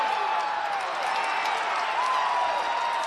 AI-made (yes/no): no